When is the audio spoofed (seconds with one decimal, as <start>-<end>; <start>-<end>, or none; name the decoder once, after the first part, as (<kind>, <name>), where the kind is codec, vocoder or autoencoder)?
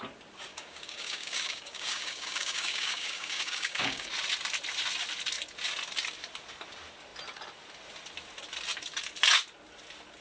0.5-4.1 (codec, DAC)